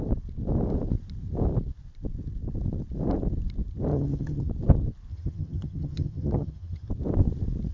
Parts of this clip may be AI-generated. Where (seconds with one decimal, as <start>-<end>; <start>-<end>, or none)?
3.9-4.5; 5.1-6.9